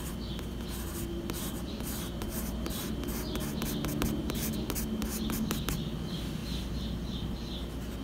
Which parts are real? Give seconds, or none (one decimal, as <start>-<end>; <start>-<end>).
0.0-8.0